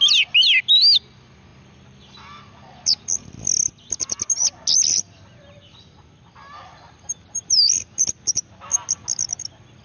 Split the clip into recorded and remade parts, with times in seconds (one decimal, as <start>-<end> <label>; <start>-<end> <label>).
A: 0.0-9.8 recorded

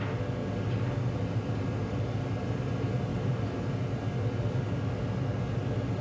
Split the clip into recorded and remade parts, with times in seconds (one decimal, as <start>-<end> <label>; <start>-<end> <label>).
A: 0.0-6.0 recorded

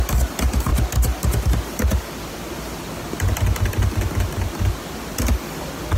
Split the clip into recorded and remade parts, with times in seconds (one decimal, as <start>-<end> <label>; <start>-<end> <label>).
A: 0.0-6.0 recorded

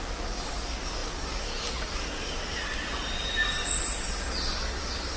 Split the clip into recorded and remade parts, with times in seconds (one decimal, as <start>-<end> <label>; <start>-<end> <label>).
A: 0.0-2.4 remade; 2.4-4.8 recorded; 4.8-5.2 remade

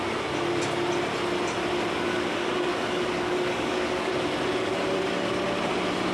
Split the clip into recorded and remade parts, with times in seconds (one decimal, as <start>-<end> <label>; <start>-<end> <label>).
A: 0.0-2.1 recorded; 2.1-4.1 remade; 4.1-4.6 recorded; 4.6-5.3 remade; 5.3-6.1 recorded

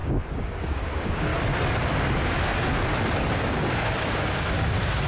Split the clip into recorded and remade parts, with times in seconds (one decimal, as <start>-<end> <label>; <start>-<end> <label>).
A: 0.0-1.3 remade; 1.3-1.9 recorded; 1.9-2.5 remade; 2.5-3.3 recorded; 3.3-5.1 remade

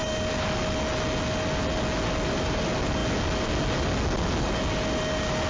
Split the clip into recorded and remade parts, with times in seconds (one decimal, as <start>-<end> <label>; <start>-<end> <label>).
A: 0.0-5.5 recorded

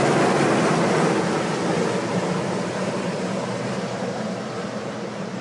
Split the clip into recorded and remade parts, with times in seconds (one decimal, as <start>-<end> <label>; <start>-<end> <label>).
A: 0.0-2.1 recorded; 2.1-5.4 remade